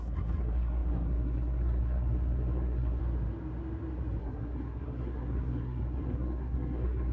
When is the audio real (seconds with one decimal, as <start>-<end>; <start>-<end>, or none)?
3.0-4.2